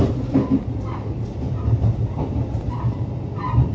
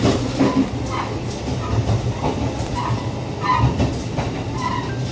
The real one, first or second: second